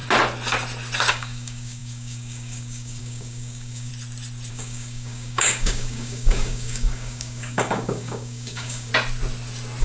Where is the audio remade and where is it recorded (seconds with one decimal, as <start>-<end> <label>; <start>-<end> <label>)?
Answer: 0.0-1.1 recorded; 1.1-3.9 remade; 3.9-4.5 recorded; 4.5-8.9 remade; 8.9-9.8 recorded